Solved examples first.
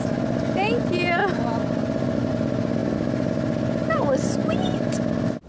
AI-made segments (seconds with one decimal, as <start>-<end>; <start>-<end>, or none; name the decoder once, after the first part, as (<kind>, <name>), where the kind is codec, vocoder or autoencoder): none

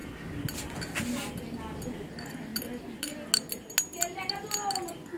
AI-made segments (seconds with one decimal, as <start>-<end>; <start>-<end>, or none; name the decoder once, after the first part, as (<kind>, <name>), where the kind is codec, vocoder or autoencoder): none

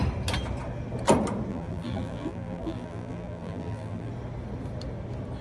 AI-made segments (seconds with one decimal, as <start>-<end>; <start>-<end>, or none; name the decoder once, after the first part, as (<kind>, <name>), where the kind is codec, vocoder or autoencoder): 1.5-4.1 (vocoder, BigVGAN v2)

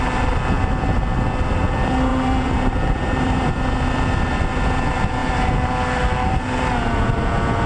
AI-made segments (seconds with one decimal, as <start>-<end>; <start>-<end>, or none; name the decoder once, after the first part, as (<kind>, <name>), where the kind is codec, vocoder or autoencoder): 2.1-3.5 (vocoder, BigVGAN v2)